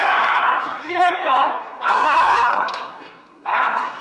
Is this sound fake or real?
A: fake